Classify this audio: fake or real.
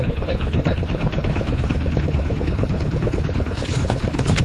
fake